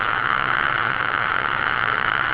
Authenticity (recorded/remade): remade